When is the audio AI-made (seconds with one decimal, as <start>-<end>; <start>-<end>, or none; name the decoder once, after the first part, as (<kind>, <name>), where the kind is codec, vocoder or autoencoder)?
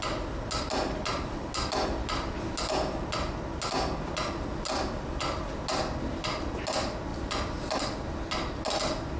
none